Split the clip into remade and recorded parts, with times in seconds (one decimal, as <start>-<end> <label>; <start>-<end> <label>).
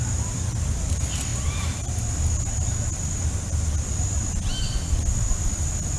0.0-6.0 recorded